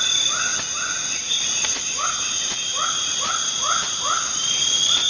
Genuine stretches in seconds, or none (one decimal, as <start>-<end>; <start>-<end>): 0.0-5.1

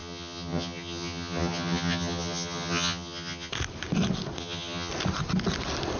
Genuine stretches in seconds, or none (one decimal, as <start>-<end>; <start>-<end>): 3.5-4.4; 4.9-6.0

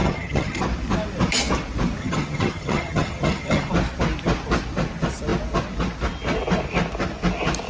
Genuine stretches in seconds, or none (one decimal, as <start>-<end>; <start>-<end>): 0.6-2.0; 3.7-7.7